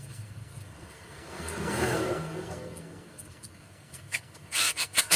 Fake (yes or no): yes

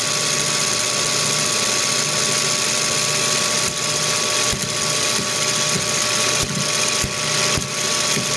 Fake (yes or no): no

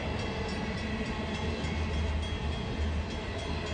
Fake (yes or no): no